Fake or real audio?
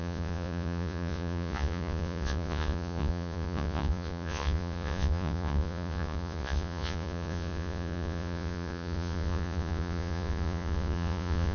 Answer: fake